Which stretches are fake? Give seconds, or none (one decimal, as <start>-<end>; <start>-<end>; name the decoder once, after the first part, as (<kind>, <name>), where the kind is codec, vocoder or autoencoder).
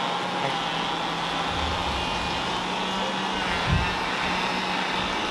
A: none